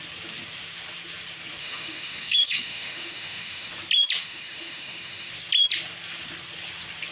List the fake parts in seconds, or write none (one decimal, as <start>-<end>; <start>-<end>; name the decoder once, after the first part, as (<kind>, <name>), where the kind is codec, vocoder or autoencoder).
1.6-3.7 (autoencoder, DAC-VAE); 4.2-5.3